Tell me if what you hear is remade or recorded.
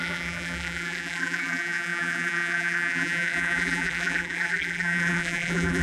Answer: remade